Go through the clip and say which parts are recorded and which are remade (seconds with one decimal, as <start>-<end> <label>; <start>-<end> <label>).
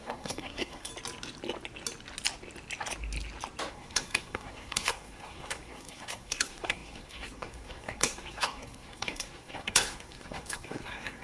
0.0-0.9 remade; 0.9-3.7 recorded; 3.7-11.2 remade